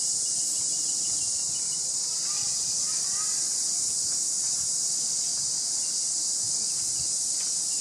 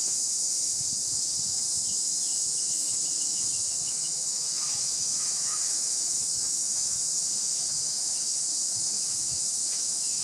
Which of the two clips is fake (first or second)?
second